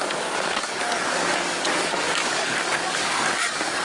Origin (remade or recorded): remade